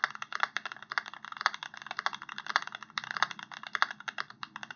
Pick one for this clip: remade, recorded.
recorded